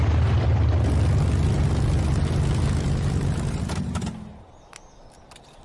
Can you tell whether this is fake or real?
real